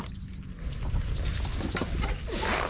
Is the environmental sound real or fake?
real